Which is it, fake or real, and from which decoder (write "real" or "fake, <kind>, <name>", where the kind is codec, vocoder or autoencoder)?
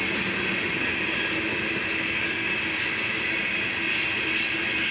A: real